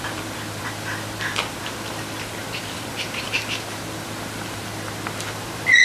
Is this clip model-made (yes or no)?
yes